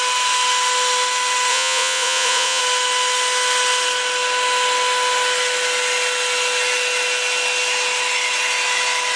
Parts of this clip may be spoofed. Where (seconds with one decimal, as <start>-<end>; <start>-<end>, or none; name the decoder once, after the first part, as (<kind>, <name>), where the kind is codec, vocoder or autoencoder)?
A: 1.5-2.6 (vocoder, Vocos)